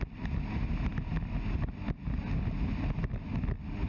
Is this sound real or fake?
real